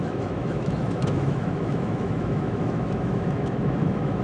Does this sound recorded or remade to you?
remade